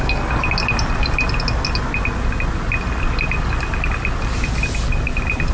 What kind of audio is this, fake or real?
real